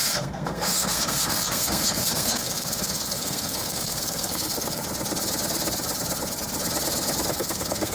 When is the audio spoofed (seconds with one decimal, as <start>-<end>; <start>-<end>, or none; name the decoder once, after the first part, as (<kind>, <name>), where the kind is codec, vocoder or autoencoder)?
0.0-4.8 (codec, SNAC); 7.3-7.9